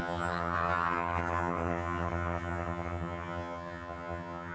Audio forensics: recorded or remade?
remade